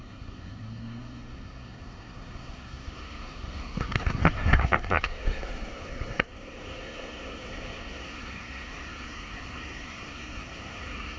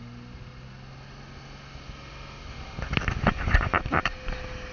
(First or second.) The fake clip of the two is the first